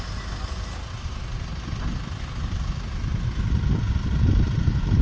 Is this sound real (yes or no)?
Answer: yes